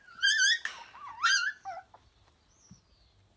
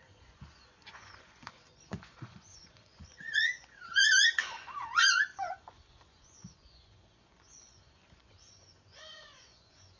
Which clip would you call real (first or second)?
first